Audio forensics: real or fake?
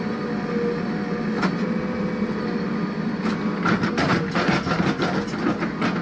real